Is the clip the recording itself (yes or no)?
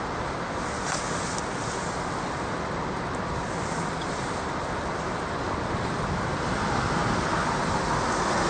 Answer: yes